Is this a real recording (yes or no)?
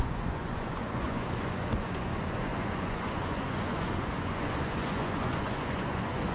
no